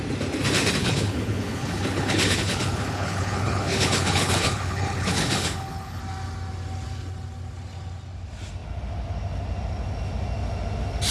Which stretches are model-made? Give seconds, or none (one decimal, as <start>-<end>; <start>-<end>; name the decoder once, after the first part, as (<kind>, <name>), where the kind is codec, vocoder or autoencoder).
0.8-6.0 (codec, HILCodec)